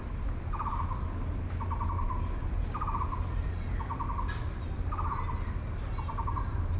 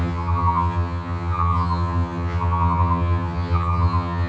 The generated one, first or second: second